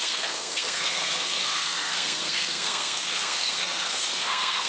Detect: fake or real fake